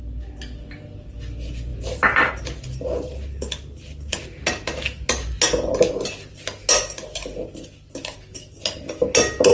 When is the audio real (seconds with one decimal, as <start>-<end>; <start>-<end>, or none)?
0.0-1.7; 2.3-9.5